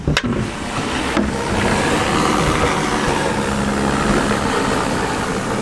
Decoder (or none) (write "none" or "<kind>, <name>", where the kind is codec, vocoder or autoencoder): none